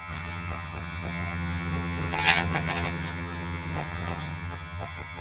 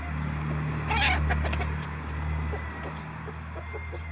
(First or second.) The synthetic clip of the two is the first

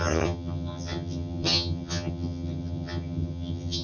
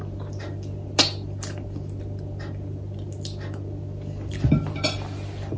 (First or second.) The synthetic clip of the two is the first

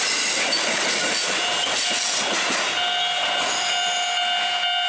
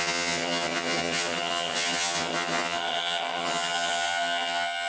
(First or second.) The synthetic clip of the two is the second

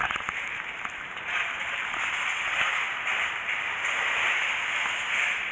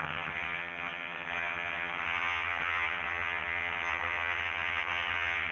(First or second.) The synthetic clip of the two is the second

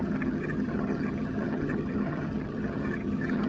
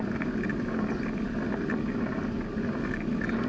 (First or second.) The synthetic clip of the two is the first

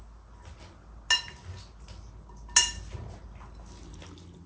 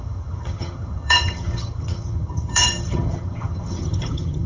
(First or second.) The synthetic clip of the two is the second